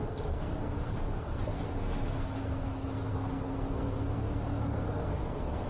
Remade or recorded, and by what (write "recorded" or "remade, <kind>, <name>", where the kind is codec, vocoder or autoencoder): remade, codec, SNAC